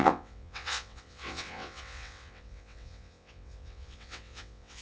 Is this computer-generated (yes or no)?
yes